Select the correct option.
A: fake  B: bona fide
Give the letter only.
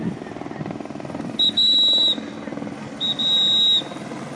B